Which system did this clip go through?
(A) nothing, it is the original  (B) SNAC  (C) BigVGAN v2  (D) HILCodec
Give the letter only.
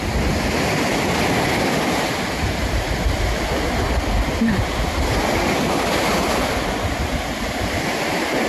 A